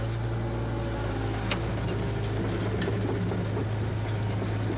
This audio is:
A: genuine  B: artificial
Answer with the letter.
A